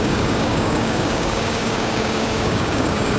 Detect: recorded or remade remade